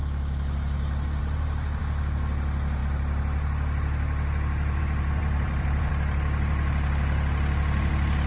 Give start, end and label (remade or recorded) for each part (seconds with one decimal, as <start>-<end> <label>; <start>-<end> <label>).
0.0-1.2 recorded; 1.2-1.8 remade; 1.8-5.2 recorded; 5.2-5.9 remade; 5.9-8.3 recorded